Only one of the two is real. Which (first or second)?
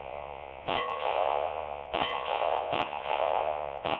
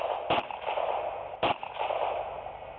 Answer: second